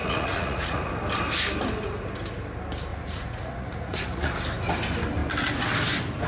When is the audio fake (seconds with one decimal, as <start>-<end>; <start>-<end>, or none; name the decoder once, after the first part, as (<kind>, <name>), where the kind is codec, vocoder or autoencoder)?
0.0-0.9 (vocoder, Vocos); 2.9-4.3